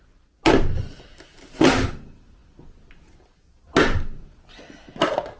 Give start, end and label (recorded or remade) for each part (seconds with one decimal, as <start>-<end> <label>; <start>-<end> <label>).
0.0-5.4 recorded